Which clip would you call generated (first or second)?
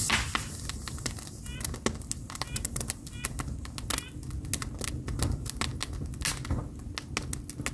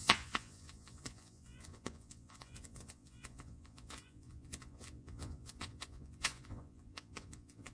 second